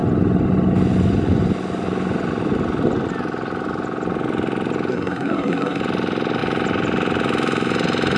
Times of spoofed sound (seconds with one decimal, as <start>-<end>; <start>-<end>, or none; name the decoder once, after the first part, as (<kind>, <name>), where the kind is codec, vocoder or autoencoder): 4.9-5.8 (codec, SNAC)